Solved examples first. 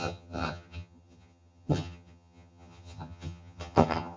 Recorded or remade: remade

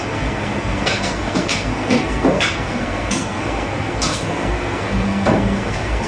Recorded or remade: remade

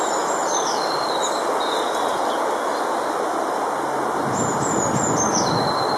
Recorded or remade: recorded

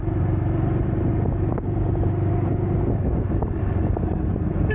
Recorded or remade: recorded